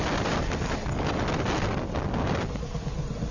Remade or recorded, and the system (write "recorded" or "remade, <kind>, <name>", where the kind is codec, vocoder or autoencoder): recorded